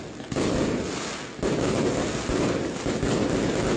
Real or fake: real